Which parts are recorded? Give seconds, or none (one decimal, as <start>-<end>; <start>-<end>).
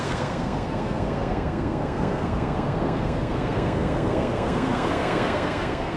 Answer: none